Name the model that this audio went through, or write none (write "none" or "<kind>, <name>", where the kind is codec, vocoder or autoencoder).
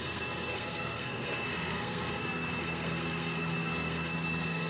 codec, SNAC